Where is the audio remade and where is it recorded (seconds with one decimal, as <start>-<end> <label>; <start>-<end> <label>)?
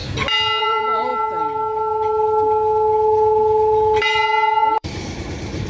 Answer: 0.0-0.6 recorded; 0.6-1.1 remade; 1.1-4.0 recorded; 4.0-5.7 remade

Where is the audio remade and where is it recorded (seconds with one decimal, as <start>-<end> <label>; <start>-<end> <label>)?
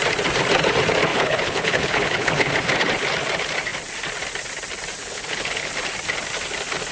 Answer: 0.0-1.1 recorded; 1.1-2.5 remade; 2.5-5.0 recorded; 5.0-5.7 remade; 5.7-6.9 recorded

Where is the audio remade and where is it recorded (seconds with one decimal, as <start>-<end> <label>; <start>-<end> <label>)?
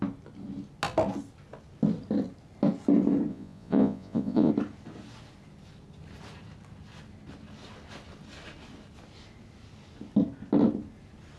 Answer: 0.0-3.3 recorded; 3.3-4.5 remade; 4.5-11.4 recorded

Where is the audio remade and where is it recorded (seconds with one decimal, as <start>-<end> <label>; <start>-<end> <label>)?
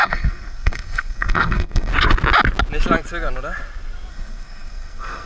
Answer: 0.0-1.9 remade; 1.9-4.1 recorded; 4.1-5.3 remade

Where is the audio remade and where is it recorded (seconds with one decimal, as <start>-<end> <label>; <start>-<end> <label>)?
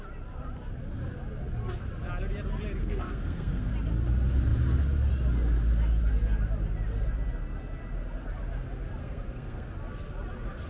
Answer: 0.0-2.8 recorded; 2.8-3.7 remade; 3.7-9.0 recorded; 9.0-9.7 remade; 9.7-10.7 recorded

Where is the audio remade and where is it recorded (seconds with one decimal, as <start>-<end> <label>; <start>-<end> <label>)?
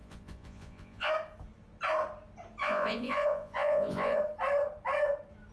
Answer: 0.0-1.1 remade; 1.1-2.6 recorded; 2.6-4.2 remade; 4.2-5.5 recorded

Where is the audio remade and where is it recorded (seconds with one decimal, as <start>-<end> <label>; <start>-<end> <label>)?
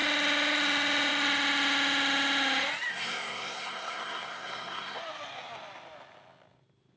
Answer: 0.0-2.9 recorded; 2.9-5.0 remade; 5.0-7.0 recorded